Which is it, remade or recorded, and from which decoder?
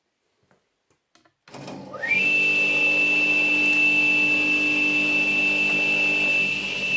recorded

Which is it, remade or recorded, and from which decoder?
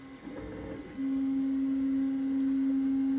recorded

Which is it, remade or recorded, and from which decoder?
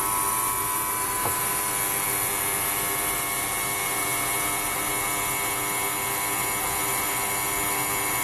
recorded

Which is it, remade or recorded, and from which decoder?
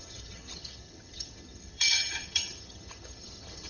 remade, vocoder, HiFi-GAN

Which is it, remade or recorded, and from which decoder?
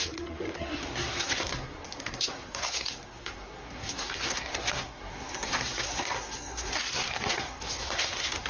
remade, codec, SNAC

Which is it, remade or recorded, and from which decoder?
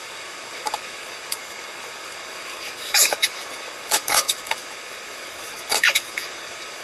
remade, codec, DAC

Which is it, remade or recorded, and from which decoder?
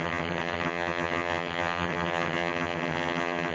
remade, vocoder, HiFi-GAN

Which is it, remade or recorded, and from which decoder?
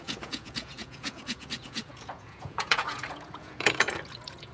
remade, vocoder, Vocos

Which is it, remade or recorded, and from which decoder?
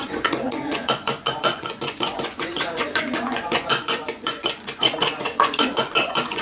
remade, vocoder, Vocos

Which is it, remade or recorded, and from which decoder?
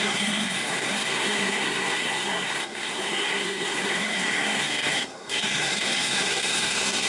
remade, codec, SNAC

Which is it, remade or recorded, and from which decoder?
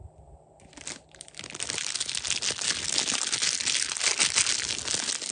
recorded